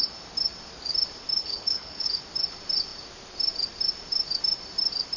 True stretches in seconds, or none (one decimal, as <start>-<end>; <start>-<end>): 0.0-1.4; 2.2-5.2